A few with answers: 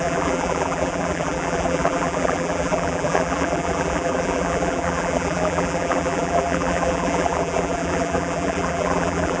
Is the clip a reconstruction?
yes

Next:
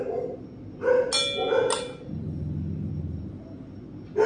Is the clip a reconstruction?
no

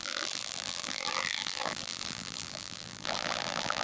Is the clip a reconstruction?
yes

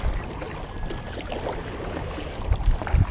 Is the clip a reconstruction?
no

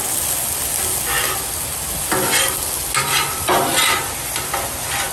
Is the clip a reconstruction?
no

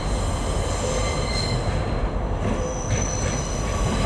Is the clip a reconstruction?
no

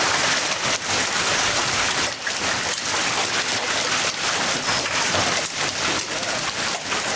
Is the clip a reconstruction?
yes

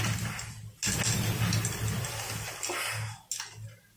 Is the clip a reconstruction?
no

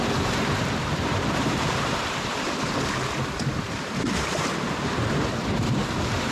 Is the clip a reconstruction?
yes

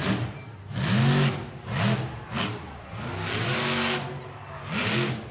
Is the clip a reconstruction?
no